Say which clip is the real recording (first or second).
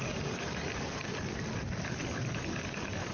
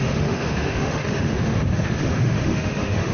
first